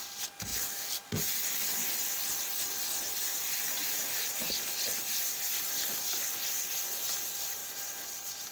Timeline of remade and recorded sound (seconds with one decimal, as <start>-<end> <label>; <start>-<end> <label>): 0.0-0.5 recorded; 0.5-1.9 remade; 1.9-3.8 recorded; 3.8-4.5 remade; 4.5-8.5 recorded